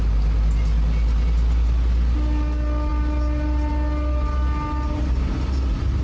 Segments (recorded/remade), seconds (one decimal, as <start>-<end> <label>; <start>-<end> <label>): 0.0-6.0 recorded